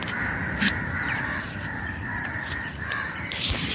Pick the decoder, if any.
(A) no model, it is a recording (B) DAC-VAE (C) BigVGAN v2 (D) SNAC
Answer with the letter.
C